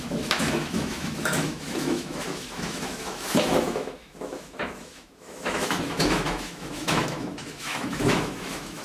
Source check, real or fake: fake